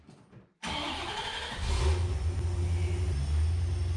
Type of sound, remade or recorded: recorded